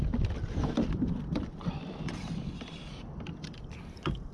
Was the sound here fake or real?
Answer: fake